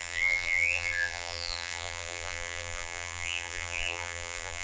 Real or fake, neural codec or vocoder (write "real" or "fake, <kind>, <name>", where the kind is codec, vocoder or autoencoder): fake, vocoder, BigVGAN v2